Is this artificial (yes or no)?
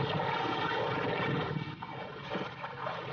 no